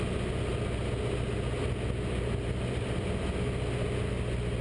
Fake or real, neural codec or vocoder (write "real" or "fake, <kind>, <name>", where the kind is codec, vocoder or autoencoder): real